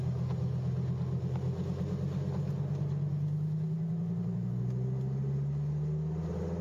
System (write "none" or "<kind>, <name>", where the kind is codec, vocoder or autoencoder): none